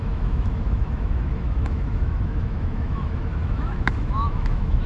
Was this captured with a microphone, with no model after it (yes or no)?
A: no